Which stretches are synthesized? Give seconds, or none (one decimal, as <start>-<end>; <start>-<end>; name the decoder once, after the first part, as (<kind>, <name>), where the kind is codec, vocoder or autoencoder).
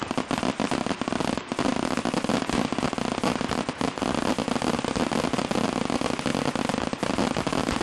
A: none